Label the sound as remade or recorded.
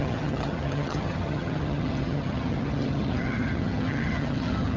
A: remade